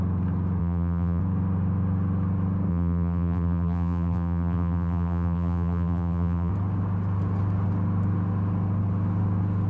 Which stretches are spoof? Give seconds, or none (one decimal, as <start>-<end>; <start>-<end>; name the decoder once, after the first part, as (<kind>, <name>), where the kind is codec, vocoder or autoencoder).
0.6-1.2 (vocoder, BigVGAN v2); 2.7-6.5